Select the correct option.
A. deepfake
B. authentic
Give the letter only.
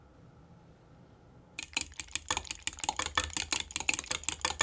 B